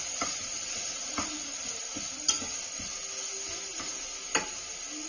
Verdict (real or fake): real